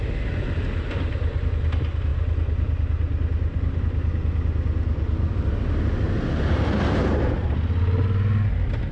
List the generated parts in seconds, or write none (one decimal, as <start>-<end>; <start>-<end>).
none